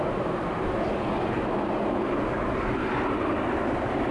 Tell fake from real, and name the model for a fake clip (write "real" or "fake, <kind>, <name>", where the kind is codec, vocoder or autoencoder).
real